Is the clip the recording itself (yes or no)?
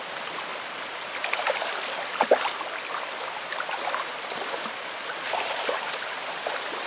yes